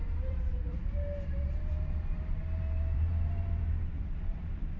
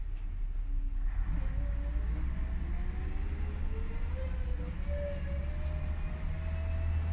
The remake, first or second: first